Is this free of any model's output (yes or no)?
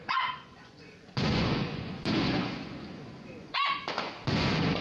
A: no